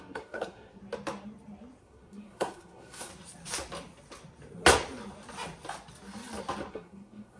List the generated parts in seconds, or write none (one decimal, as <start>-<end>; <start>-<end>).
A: 0.0-0.8; 1.8-3.1; 6.7-7.4

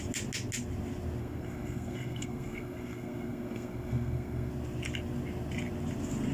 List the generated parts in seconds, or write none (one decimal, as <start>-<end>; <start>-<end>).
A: 1.2-4.5

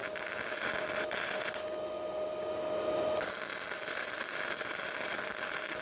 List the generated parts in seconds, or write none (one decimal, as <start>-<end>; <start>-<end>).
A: none

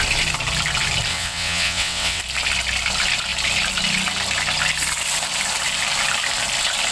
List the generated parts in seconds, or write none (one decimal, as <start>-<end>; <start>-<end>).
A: 1.1-2.2

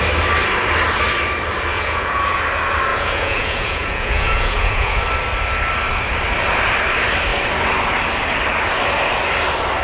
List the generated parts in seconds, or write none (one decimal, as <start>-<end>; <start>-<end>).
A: 1.7-2.4; 2.9-5.0

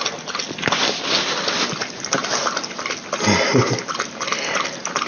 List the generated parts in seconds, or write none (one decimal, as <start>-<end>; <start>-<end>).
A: none

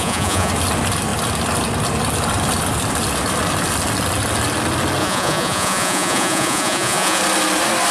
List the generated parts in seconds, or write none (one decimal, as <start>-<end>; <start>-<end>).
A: 0.0-0.5; 5.0-7.2

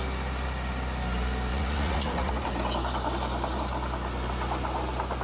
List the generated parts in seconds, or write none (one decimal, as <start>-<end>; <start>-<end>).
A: 1.5-2.3